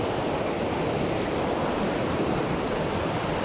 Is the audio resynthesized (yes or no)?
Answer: no